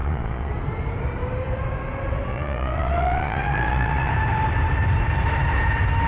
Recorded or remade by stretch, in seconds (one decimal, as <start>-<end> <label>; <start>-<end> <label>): 0.0-0.5 remade; 0.5-2.3 recorded; 2.3-4.1 remade; 4.1-6.1 recorded